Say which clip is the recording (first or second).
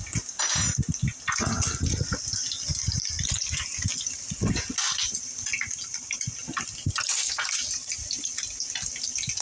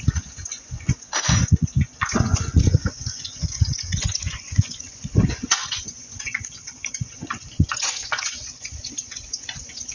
first